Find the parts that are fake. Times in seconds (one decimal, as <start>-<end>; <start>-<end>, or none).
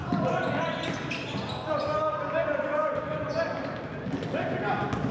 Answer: 2.8-3.5